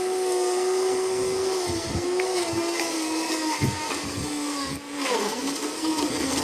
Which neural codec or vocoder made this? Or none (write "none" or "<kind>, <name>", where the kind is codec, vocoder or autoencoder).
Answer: codec, SNAC